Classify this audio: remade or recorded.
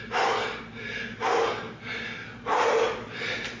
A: recorded